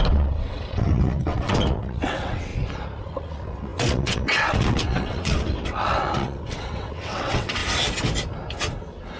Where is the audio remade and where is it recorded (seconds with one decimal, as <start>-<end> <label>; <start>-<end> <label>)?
0.0-2.5 remade; 2.5-3.0 recorded; 3.0-7.6 remade; 7.6-9.2 recorded